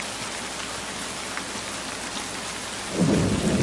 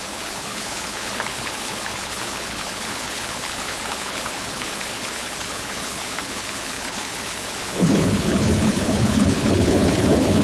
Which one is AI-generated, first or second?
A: second